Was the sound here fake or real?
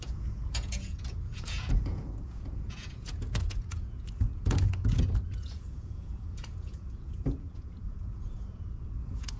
fake